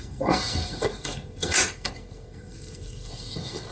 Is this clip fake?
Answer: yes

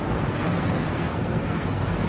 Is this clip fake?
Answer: yes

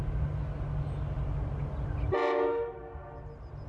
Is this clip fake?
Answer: no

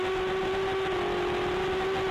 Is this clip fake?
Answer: no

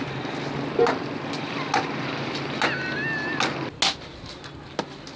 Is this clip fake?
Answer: no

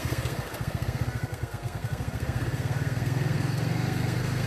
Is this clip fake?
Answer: yes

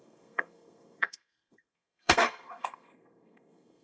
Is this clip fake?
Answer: yes